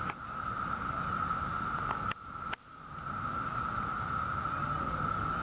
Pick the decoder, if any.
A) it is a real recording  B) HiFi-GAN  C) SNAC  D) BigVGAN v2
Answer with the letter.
A